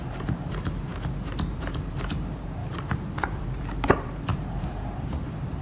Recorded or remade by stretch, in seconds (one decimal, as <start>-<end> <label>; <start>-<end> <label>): 0.0-0.9 remade; 0.9-1.5 recorded; 1.5-2.6 remade; 2.6-3.2 recorded; 3.2-5.6 remade